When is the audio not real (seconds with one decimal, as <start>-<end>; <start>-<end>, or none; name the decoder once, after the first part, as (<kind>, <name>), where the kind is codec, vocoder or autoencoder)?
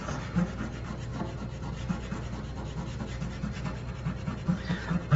none